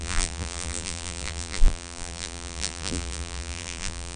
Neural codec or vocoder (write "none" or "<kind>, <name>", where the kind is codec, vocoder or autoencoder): vocoder, BigVGAN v2